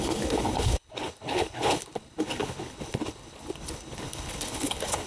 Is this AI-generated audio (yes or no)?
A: yes